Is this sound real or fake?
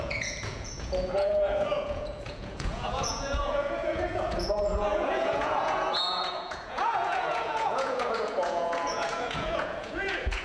fake